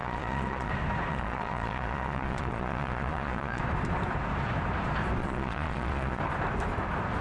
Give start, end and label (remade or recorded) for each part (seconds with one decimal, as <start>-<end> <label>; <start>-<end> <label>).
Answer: 0.0-0.7 remade; 0.7-1.1 recorded; 1.1-3.6 remade; 3.6-5.2 recorded; 5.2-6.2 remade; 6.2-7.2 recorded